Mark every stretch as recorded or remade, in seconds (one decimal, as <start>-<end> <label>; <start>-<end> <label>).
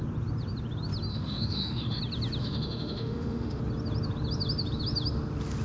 0.0-1.1 recorded; 1.1-2.0 remade; 2.0-2.4 recorded; 2.4-3.6 remade; 3.6-5.6 recorded